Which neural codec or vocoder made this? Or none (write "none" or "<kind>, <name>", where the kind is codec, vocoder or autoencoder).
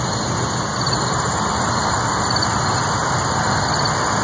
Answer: none